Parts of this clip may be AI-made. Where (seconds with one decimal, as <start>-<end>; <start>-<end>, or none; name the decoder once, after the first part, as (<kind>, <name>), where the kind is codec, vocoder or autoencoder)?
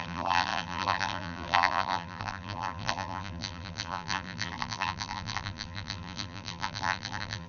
0.0-7.5 (vocoder, BigVGAN v2)